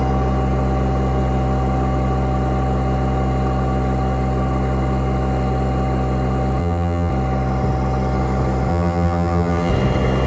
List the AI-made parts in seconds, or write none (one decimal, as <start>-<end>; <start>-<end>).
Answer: 6.6-7.1; 8.7-9.7